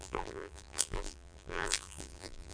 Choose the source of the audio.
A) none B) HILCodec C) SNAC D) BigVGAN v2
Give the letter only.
D